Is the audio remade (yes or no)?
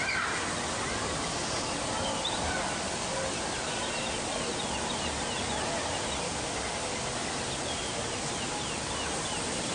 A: no